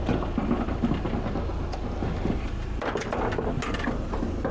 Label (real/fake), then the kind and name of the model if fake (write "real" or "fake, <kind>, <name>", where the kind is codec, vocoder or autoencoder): real